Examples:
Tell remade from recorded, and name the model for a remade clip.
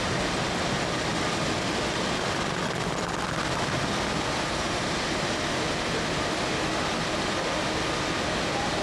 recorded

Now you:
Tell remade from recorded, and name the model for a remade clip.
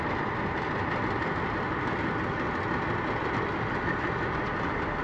recorded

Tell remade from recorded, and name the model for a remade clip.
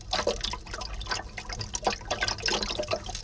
recorded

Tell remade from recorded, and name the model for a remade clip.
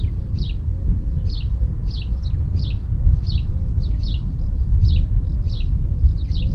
recorded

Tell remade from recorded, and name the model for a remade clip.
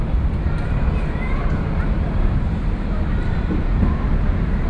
remade, vocoder, BigVGAN v2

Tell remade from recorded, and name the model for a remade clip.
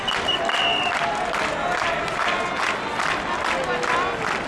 recorded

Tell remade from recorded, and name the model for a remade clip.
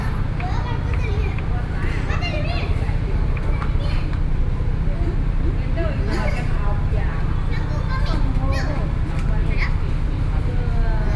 recorded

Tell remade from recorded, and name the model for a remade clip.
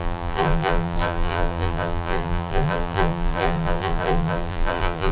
remade, vocoder, BigVGAN v2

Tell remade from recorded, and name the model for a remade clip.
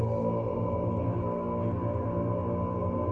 recorded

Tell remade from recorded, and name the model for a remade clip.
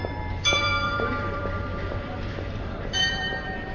remade, vocoder, BigVGAN v2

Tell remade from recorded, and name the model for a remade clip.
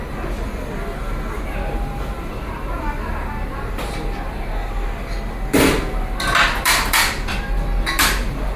recorded